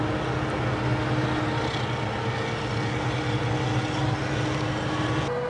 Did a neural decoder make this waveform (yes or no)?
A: no